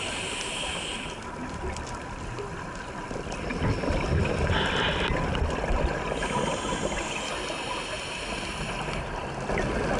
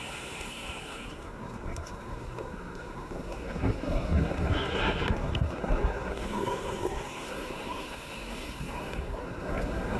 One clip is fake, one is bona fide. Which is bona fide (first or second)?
first